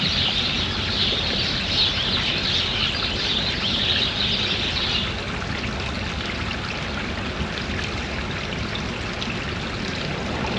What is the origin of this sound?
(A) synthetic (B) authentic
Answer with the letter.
B